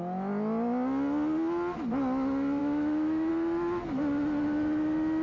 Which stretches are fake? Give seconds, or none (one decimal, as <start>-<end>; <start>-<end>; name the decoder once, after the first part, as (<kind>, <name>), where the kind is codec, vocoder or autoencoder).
2.6-3.3 (autoencoder, DAC-VAE)